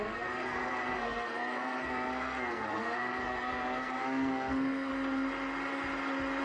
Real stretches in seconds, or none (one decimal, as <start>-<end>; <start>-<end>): 4.9-6.4